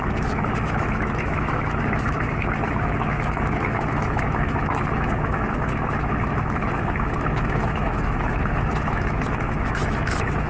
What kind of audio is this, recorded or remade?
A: remade